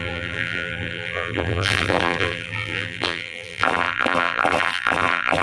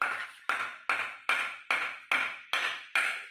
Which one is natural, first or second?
second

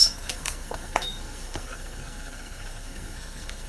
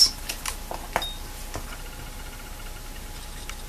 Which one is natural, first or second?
second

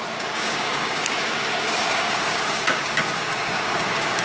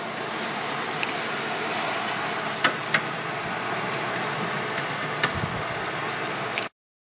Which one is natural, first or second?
second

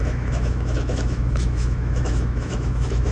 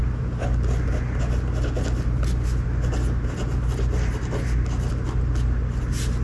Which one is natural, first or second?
second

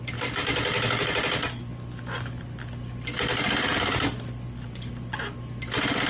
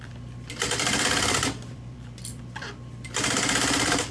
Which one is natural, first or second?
first